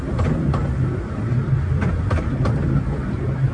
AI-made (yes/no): no